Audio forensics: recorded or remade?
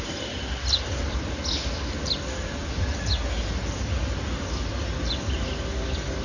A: recorded